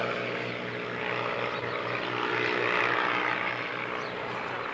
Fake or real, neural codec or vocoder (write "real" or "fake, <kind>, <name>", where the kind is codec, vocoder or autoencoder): real